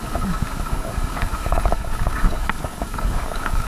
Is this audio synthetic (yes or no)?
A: yes